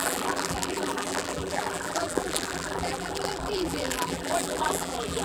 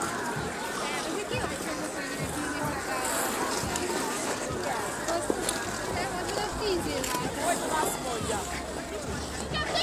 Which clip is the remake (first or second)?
first